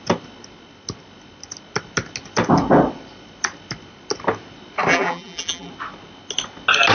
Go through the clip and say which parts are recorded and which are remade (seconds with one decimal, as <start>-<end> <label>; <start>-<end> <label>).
0.0-4.9 recorded; 4.9-5.7 remade; 5.7-6.9 recorded